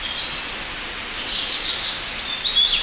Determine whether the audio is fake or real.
real